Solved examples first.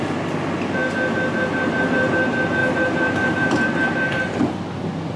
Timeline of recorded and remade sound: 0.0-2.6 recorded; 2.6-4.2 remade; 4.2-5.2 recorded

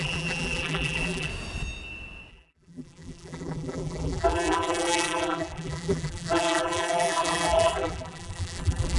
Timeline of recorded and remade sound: 0.0-1.3 remade; 1.3-2.3 recorded; 2.3-9.0 remade

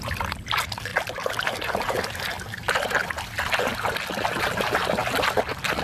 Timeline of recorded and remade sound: 0.0-5.8 recorded

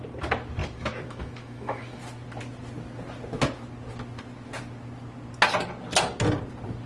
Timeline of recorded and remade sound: 0.0-0.6 recorded; 0.6-2.0 remade; 2.0-6.9 recorded

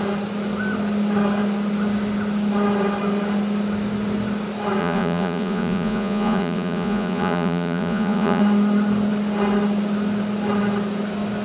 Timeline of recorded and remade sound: 0.0-4.8 recorded; 4.8-8.4 remade; 8.4-11.4 recorded

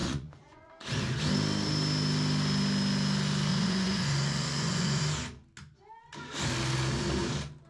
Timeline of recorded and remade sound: 0.0-0.7 remade; 0.7-3.5 recorded; 3.5-5.0 remade; 5.0-7.7 recorded

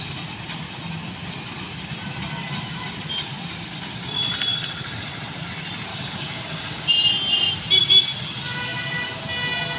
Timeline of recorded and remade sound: 0.0-5.9 recorded; 5.9-6.8 remade; 6.8-9.8 recorded

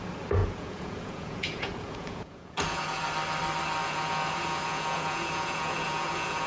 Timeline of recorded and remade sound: 0.0-0.4 recorded; 0.4-3.0 remade; 3.0-3.8 recorded; 3.8-6.5 remade